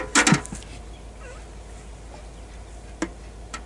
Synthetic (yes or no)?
no